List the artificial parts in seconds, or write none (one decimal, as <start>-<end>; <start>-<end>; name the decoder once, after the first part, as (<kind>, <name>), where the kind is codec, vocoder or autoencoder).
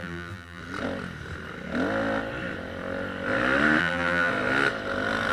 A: 0.0-0.6 (vocoder, BigVGAN v2); 3.8-4.3